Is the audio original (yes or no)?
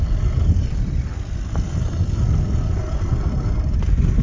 yes